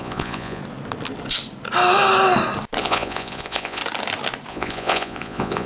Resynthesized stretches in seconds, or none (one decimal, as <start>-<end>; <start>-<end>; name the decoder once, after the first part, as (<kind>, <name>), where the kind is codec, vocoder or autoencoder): 0.0-0.6 (vocoder, Vocos); 2.8-3.8; 4.5-5.7